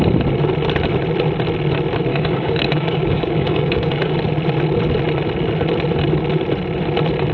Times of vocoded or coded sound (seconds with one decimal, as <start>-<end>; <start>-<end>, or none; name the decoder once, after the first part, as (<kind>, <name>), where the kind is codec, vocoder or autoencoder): 2.1-4.1 (codec, DAC)